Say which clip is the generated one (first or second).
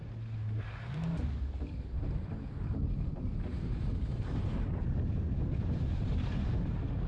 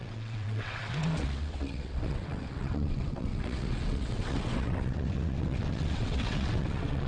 second